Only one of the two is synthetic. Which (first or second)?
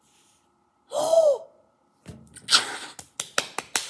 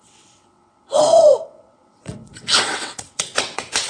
second